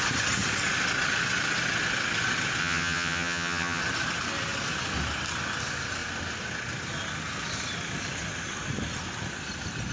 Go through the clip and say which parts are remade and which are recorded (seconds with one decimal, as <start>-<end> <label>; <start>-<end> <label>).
0.0-2.6 recorded; 2.6-3.8 remade; 3.8-9.9 recorded